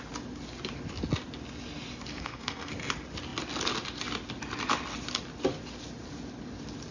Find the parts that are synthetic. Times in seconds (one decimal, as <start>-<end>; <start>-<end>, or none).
2.1-2.7